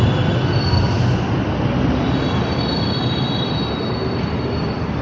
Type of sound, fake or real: real